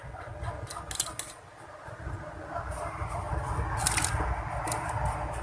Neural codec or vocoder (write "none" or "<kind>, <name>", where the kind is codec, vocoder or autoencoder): none